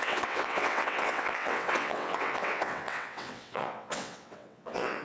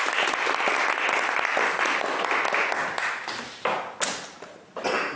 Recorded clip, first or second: second